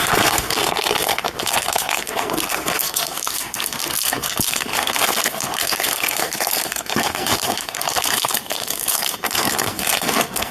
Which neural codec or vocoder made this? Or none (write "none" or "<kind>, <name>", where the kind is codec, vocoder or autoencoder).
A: codec, SNAC